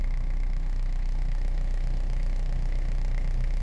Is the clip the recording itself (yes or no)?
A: no